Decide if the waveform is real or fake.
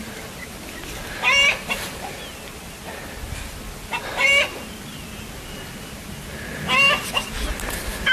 real